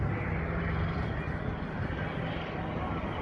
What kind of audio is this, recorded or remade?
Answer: recorded